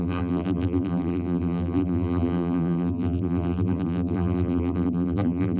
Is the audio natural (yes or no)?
no